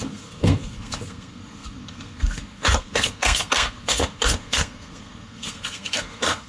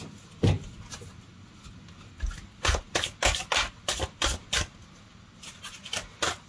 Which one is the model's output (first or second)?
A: first